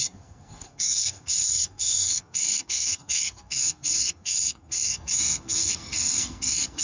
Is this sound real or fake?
fake